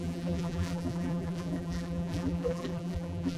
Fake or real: fake